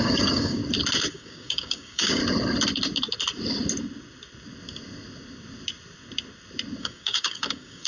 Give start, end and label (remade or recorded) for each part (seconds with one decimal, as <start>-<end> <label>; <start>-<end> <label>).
0.0-0.6 remade; 0.6-1.1 recorded; 1.1-2.2 remade; 2.2-6.8 recorded; 6.8-7.9 remade